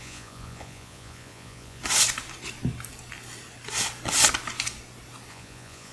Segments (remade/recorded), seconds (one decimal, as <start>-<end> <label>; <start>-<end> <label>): 0.0-1.8 remade; 1.8-5.3 recorded; 5.3-5.9 remade